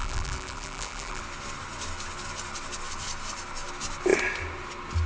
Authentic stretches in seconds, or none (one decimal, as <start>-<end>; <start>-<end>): 1.2-5.1